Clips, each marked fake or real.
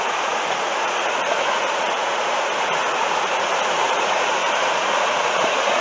fake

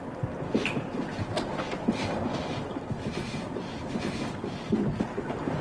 real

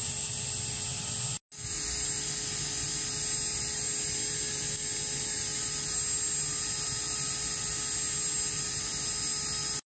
real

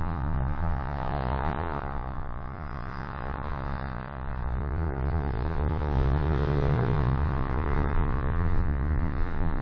fake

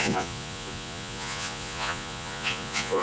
fake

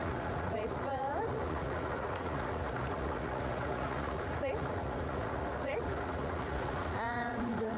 fake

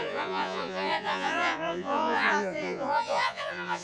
fake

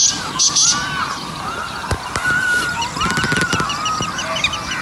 real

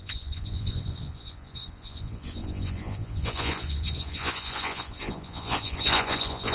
fake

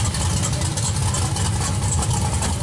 real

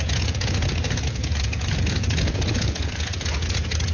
fake